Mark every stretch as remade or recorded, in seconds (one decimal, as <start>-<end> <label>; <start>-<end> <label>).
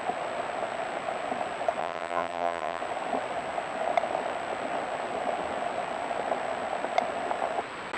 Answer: 0.0-1.8 recorded; 1.8-2.8 remade; 2.8-8.0 recorded